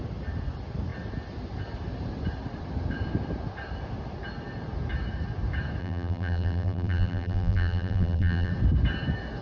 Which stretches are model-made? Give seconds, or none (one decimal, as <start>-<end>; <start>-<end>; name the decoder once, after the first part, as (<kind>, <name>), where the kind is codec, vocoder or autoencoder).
5.8-8.5 (vocoder, BigVGAN v2)